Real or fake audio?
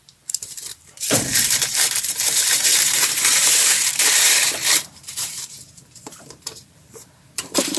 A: fake